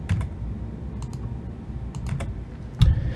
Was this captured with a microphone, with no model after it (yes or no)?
yes